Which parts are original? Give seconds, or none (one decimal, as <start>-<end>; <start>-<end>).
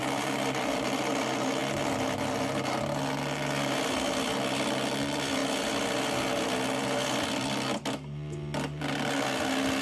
1.1-9.8